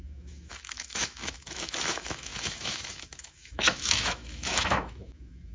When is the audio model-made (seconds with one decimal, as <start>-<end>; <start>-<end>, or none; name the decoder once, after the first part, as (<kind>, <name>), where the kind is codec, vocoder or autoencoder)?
0.0-5.5 (autoencoder, DAC-VAE)

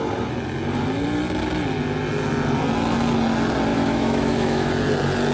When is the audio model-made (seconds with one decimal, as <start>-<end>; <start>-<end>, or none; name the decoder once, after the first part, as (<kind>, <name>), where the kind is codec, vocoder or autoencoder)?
3.7-4.7 (autoencoder, DAC-VAE)

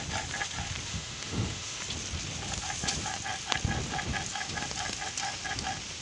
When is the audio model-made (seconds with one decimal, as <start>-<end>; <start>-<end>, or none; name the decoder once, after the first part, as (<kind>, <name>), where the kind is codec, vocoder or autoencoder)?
0.9-1.8 (autoencoder, DAC-VAE)

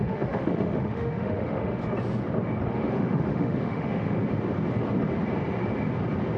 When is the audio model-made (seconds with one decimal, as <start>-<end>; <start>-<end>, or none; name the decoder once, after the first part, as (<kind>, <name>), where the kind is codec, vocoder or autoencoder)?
0.0-1.8 (autoencoder, DAC-VAE); 2.7-4.2

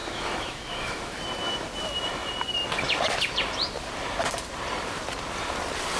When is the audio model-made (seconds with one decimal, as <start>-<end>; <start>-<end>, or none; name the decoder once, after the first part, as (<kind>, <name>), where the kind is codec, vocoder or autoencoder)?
0.0-1.2 (autoencoder, DAC-VAE)

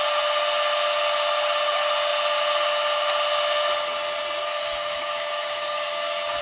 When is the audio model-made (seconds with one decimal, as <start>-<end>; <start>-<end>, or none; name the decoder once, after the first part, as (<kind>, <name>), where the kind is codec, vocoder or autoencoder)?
4.5-6.4 (autoencoder, DAC-VAE)

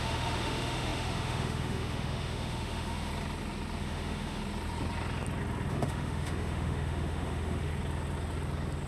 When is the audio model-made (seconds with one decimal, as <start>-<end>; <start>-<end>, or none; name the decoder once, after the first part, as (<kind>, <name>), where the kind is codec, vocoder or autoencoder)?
0.0-3.1 (autoencoder, DAC-VAE); 3.8-4.4; 5.7-7.7